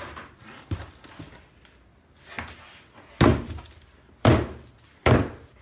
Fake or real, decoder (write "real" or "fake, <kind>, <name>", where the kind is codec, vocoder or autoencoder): real